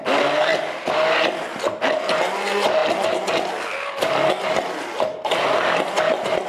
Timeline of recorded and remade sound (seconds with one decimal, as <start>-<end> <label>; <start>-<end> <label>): 0.0-0.5 recorded; 0.5-1.2 remade; 1.2-2.8 recorded; 2.8-3.5 remade; 3.5-6.5 recorded